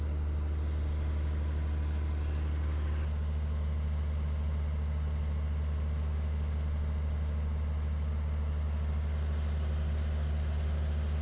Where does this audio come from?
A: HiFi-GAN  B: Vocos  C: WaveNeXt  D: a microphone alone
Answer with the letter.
D